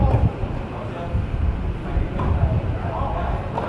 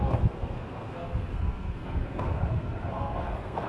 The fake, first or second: second